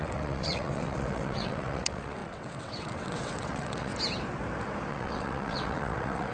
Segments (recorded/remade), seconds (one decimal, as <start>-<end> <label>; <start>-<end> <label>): 0.0-3.9 remade; 3.9-4.9 recorded; 4.9-6.3 remade